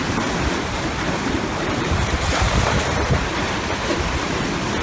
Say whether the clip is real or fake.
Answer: fake